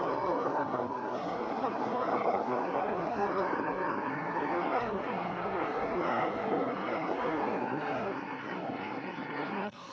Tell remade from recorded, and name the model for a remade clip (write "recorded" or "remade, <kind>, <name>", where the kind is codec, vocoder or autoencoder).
remade, codec, SNAC